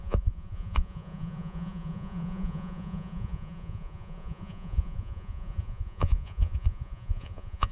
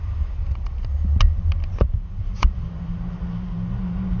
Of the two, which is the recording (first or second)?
second